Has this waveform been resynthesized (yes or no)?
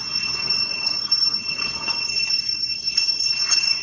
yes